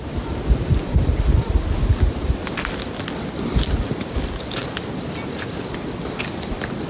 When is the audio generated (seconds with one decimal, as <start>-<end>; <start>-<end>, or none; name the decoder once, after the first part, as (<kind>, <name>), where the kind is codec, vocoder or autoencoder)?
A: none